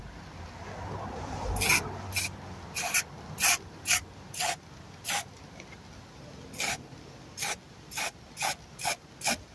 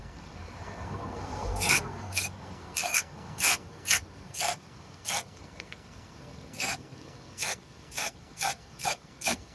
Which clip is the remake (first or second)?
second